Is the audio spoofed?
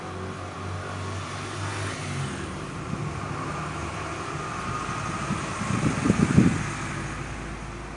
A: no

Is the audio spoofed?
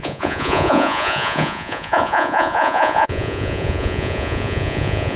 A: yes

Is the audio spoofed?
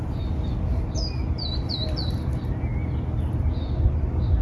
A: no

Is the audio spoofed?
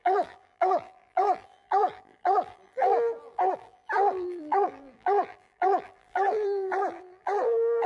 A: yes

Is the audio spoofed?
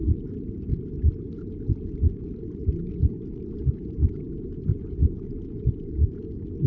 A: yes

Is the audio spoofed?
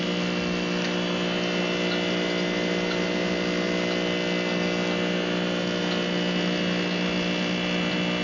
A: no